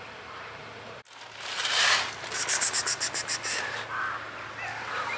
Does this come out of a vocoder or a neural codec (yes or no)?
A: no